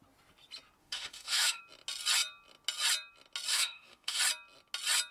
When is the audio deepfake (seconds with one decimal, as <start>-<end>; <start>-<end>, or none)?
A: 0.8-1.6; 3.5-4.2